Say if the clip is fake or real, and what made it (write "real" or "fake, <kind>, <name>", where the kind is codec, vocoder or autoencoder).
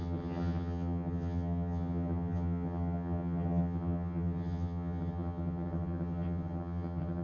fake, vocoder, HiFi-GAN